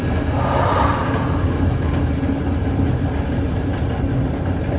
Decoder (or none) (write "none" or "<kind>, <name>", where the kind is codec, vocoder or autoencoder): none